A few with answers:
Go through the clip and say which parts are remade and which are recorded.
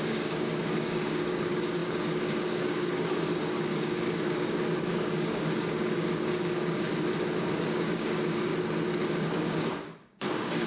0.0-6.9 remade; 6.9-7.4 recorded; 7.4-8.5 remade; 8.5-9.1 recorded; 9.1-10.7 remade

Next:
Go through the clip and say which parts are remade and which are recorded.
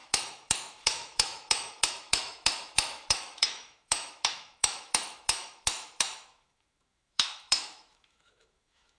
0.0-9.0 remade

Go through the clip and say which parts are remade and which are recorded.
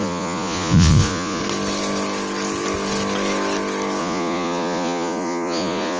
0.0-1.4 remade; 1.4-4.0 recorded; 4.0-6.0 remade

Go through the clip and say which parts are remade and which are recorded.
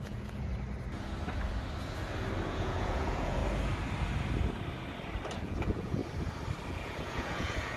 0.0-0.5 remade; 0.5-2.5 recorded; 2.5-3.4 remade; 3.4-5.4 recorded; 5.4-6.0 remade; 6.0-6.7 recorded; 6.7-7.8 remade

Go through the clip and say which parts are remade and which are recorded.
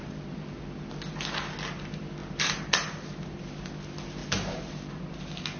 0.0-0.6 remade; 0.6-2.2 recorded; 2.2-3.5 remade; 3.5-4.2 recorded; 4.2-4.9 remade; 4.9-5.6 recorded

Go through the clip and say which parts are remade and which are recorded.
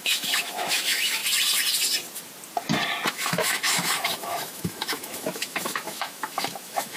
0.0-1.2 remade; 1.2-3.1 recorded; 3.1-7.0 remade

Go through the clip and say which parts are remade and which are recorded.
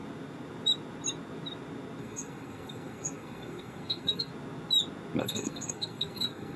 0.0-2.0 recorded; 2.0-4.3 remade; 4.3-5.2 recorded; 5.2-6.6 remade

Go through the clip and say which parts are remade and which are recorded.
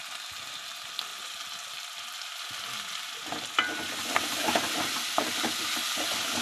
0.0-6.4 recorded